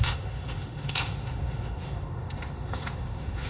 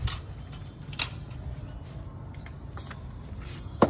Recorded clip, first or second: second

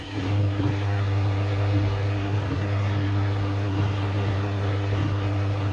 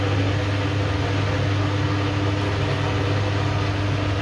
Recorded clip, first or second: second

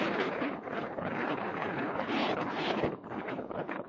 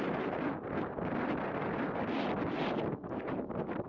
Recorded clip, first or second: second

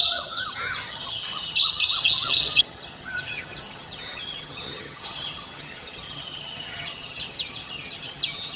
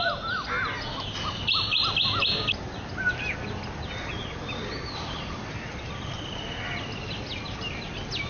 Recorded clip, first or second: second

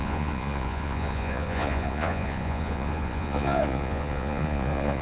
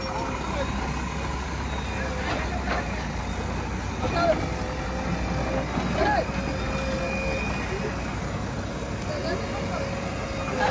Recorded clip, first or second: second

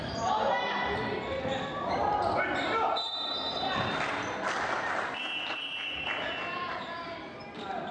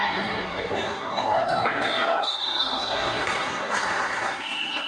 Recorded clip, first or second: first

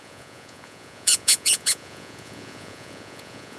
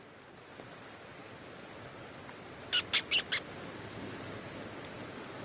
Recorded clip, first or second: second